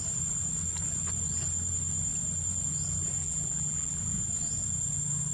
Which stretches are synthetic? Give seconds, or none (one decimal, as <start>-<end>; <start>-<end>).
3.2-4.0